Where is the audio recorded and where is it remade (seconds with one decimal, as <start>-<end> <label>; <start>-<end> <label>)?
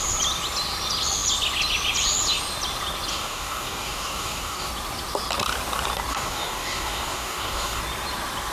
0.0-3.1 recorded; 3.1-4.7 remade; 4.7-6.1 recorded; 6.1-7.8 remade; 7.8-8.5 recorded